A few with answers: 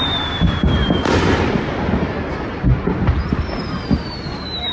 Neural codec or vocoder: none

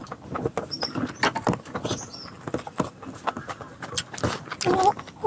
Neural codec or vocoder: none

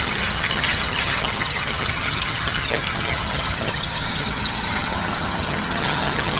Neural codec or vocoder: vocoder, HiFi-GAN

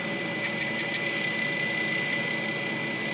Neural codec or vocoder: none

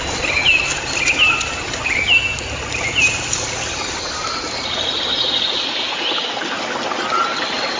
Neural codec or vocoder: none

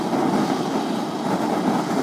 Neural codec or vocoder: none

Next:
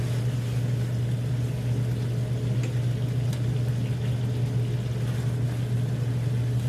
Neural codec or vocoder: none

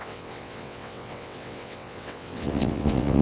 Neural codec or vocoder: vocoder, WaveNeXt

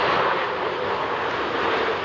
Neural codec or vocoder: none